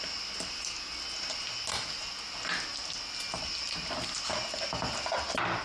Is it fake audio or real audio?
real